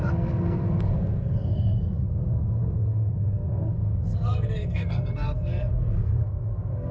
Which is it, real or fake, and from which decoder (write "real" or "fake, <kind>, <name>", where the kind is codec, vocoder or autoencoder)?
fake, codec, SNAC